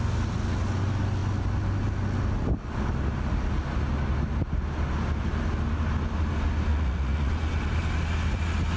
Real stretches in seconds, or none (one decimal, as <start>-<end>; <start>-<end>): 0.0-6.7; 7.3-8.8